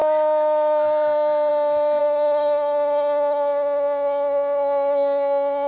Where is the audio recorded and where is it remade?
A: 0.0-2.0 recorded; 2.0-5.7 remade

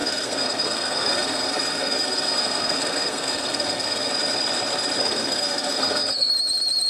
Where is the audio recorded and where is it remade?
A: 0.0-4.1 remade; 4.1-5.0 recorded; 5.0-6.3 remade; 6.3-6.9 recorded

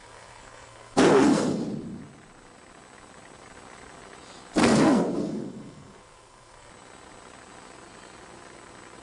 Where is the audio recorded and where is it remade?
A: 0.0-1.6 remade; 1.6-4.6 recorded; 4.6-6.7 remade; 6.7-9.0 recorded

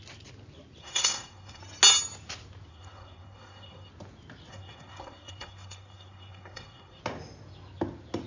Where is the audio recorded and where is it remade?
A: 0.0-0.8 recorded; 0.8-1.6 remade; 1.6-2.7 recorded; 2.7-3.9 remade; 3.9-4.5 recorded; 4.5-7.0 remade; 7.0-8.3 recorded